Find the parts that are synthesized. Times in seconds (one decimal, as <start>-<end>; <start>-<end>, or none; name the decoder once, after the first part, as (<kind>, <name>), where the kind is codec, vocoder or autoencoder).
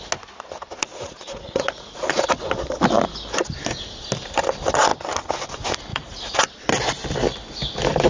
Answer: 0.9-2.1 (vocoder, Vocos); 5.9-6.4